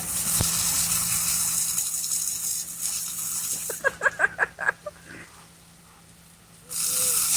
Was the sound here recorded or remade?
recorded